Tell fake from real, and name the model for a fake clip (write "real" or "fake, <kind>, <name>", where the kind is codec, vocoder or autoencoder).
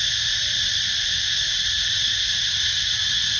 real